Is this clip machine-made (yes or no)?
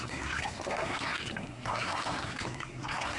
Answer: yes